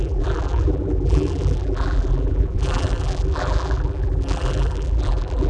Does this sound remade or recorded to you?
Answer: remade